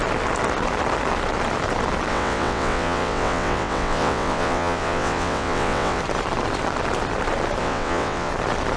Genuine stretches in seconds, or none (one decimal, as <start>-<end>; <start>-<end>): 0.0-2.1; 6.0-7.6; 8.3-8.8

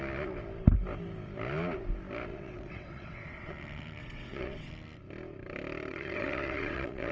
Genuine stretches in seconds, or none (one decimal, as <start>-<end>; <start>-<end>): 0.0-2.3; 3.5-4.0; 4.7-5.9

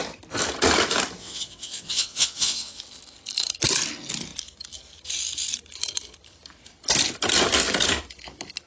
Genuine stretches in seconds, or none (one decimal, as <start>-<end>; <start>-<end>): 0.0-1.2; 2.8-8.7